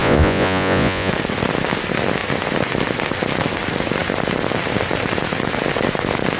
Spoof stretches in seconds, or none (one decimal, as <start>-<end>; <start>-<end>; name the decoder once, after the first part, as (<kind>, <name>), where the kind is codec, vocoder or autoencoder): 0.0-1.1 (vocoder, Vocos)

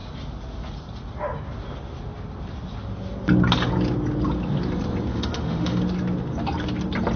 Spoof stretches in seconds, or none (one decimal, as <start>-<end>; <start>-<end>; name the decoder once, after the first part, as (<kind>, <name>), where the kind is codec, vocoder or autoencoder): 5.1-5.8 (autoencoder, DAC-VAE)

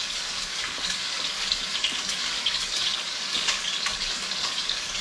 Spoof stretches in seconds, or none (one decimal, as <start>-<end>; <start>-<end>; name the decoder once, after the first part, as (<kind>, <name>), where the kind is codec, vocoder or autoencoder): 0.0-5.0 (codec, DAC)

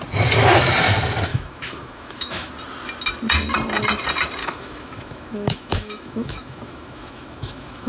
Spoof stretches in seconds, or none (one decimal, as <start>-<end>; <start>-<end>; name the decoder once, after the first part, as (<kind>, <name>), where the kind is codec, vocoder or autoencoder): 1.3-2.5 (autoencoder, DAC-VAE); 4.4-7.9

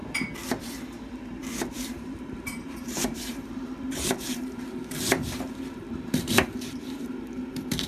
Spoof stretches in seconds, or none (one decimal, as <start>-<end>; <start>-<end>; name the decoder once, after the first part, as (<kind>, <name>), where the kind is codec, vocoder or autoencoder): 0.6-7.9 (vocoder, BigVGAN v2)

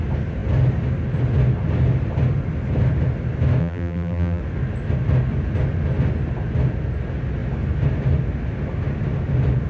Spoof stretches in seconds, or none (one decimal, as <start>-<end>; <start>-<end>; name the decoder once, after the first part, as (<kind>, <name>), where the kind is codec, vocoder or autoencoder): 3.6-4.4 (vocoder, BigVGAN v2)